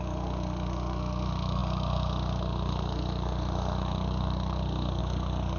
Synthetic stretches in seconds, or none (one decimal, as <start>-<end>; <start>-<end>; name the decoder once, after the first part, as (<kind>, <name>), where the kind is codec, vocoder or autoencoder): 0.0-5.6 (codec, SNAC)